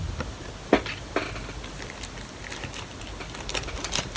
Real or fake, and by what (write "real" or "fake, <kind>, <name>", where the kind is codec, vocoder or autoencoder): real